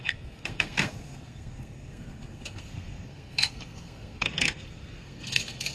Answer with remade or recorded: remade